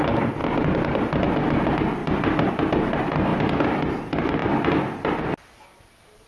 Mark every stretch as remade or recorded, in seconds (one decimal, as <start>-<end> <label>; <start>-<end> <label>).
0.0-2.0 recorded; 2.0-2.5 remade; 2.5-6.3 recorded